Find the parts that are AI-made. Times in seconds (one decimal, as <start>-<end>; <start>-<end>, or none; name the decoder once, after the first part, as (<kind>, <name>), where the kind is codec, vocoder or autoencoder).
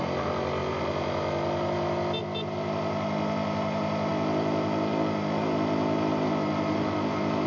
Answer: none